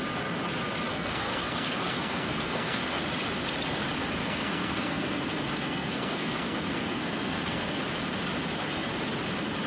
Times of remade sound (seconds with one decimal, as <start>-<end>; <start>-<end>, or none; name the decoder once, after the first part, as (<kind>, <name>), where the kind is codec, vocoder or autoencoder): 0.9-3.0 (codec, SNAC); 4.2-7.8